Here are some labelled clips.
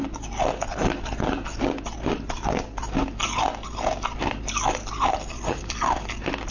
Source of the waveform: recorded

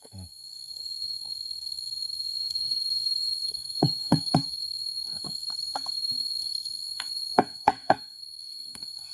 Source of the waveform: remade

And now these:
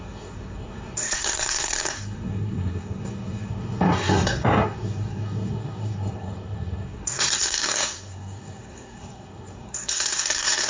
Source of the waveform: remade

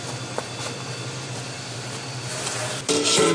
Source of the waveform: recorded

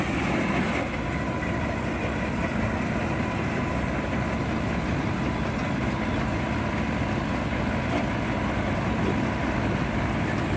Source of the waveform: recorded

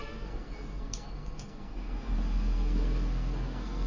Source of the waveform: remade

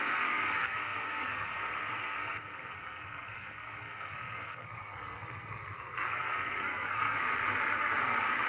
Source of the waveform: remade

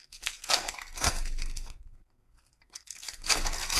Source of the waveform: remade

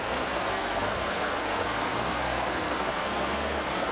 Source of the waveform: remade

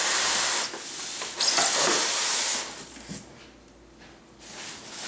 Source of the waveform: recorded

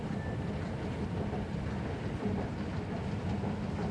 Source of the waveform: recorded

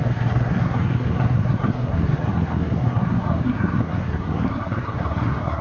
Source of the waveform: remade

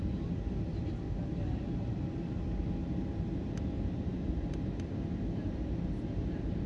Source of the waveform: recorded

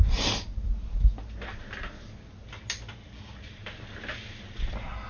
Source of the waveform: recorded